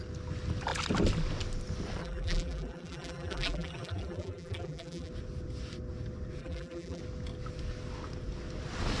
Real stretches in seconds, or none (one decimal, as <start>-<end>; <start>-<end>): 0.0-2.0; 5.1-6.4; 7.0-9.0